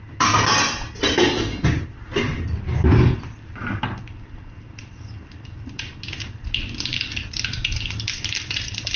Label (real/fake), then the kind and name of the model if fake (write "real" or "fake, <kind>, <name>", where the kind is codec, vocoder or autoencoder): real